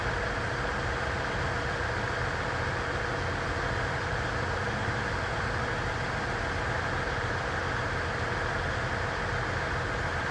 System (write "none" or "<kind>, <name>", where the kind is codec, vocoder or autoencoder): none